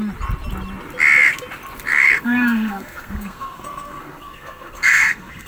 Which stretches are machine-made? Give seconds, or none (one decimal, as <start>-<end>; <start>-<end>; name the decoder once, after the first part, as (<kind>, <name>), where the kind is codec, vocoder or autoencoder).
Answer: 1.9-5.5 (codec, SNAC)